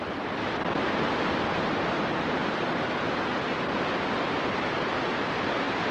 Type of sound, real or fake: real